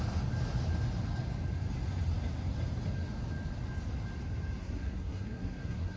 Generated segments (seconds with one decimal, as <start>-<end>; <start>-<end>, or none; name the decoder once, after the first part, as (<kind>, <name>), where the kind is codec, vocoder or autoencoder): 4.6-6.0 (codec, SNAC)